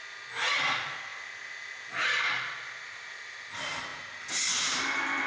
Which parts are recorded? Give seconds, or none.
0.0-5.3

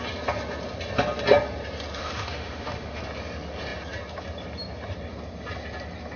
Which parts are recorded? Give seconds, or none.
0.0-2.0; 3.0-6.2

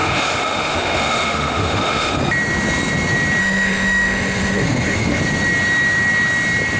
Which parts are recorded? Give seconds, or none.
2.2-3.4; 5.2-6.8

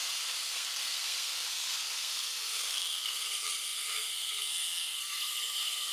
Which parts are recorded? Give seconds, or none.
none

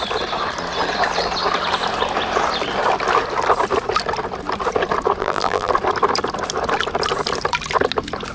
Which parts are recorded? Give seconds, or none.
0.0-5.2; 5.7-8.3

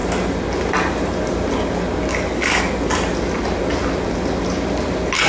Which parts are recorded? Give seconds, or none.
0.0-2.1; 2.6-5.3